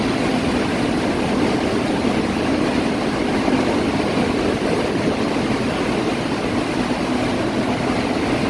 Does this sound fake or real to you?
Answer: real